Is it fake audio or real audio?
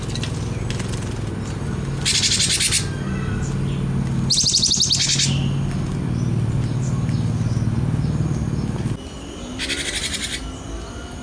real